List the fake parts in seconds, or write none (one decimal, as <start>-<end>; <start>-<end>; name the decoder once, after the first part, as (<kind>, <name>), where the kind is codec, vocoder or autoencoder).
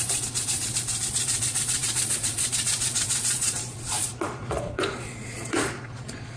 0.0-6.4 (vocoder, Vocos)